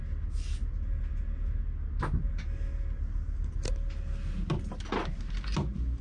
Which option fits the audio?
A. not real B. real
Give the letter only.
B